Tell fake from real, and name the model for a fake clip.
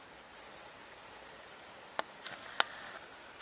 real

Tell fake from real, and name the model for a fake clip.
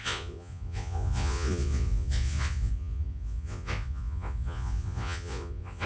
fake, vocoder, Vocos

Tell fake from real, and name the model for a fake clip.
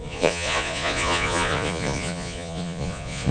fake, vocoder, Vocos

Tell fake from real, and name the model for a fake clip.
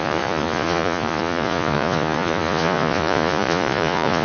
fake, vocoder, Vocos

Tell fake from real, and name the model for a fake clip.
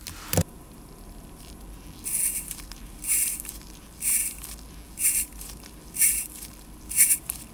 real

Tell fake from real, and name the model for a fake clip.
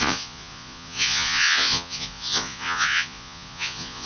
fake, vocoder, Vocos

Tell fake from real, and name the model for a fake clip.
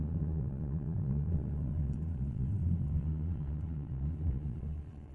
fake, vocoder, Vocos